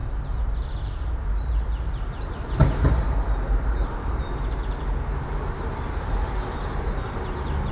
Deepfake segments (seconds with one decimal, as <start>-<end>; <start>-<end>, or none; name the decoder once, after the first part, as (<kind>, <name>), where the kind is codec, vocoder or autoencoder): 0.0-4.6 (vocoder, BigVGAN v2)